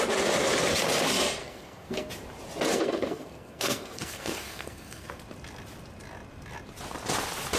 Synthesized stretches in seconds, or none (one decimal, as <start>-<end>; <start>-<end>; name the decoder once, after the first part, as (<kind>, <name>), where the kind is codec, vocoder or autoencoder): 1.4-2.1 (codec, SNAC); 2.7-5.2